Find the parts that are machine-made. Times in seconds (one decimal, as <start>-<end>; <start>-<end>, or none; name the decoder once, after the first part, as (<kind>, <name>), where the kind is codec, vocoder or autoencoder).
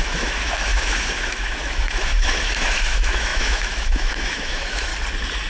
0.0-4.9 (autoencoder, DAC-VAE)